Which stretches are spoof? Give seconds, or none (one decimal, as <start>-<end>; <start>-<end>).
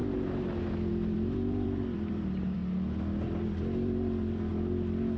0.9-2.6; 3.6-4.5